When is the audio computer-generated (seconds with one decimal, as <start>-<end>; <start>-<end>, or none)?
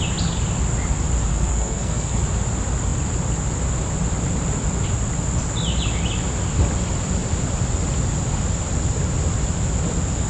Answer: 1.3-2.2